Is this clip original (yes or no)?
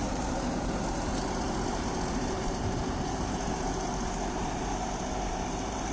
no